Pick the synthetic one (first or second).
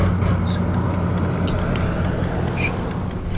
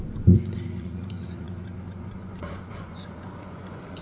second